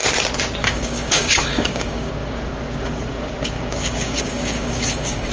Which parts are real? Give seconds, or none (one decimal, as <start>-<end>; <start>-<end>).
0.0-0.6